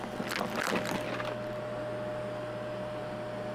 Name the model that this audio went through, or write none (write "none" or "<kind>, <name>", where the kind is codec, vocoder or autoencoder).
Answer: none